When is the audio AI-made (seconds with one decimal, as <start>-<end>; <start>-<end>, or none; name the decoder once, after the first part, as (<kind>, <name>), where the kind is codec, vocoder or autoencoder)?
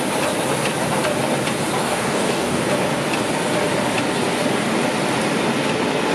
1.8-2.6 (codec, DAC)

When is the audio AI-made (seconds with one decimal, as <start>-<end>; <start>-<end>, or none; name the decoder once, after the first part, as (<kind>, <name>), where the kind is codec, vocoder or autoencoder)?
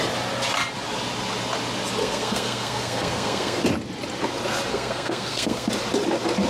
2.0-3.6 (codec, SNAC); 4.7-5.7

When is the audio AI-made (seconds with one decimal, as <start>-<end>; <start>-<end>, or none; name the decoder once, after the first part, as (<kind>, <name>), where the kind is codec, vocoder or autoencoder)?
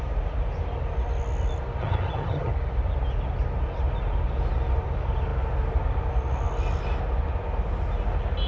1.8-2.5 (vocoder, HiFi-GAN)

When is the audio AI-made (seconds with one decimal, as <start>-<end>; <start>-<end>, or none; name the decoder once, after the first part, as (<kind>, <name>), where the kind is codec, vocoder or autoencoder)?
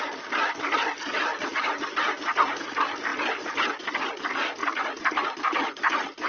none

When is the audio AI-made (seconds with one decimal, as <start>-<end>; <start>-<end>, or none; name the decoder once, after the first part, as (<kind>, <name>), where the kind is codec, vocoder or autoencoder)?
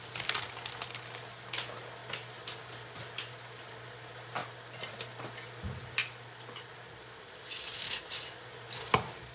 none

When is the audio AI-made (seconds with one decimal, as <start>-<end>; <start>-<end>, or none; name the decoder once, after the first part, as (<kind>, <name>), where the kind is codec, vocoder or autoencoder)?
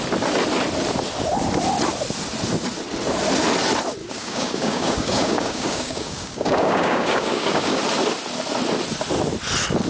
4.0-7.8 (codec, DAC)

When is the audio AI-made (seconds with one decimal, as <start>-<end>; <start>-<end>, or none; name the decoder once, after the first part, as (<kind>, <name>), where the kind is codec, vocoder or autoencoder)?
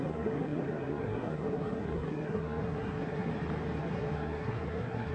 0.0-3.3 (codec, SNAC); 3.8-5.1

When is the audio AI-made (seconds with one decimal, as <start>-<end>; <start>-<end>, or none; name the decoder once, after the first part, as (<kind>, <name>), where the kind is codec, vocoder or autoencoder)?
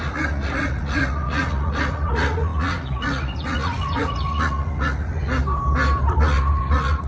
0.0-5.2 (vocoder, Vocos); 6.1-7.1